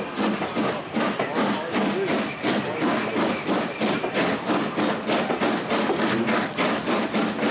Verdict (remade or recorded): recorded